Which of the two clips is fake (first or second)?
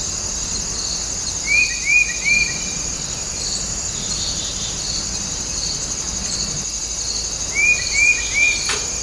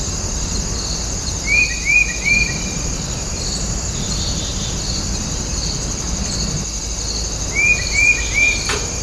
second